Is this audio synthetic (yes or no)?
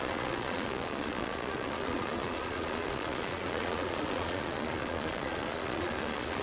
yes